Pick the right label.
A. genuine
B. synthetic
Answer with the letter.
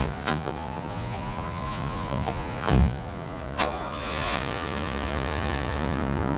B